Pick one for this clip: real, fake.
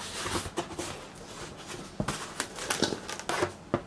real